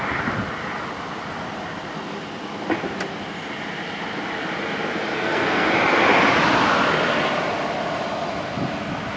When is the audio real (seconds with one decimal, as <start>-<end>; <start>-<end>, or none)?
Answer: 0.0-5.1; 5.7-9.2